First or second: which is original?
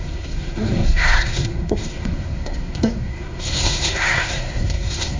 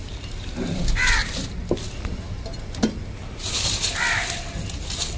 second